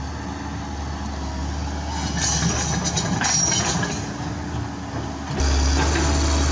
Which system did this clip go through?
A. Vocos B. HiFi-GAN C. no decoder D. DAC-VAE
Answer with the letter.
C